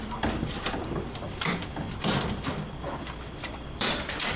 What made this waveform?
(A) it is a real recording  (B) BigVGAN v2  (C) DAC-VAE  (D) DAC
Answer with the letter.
B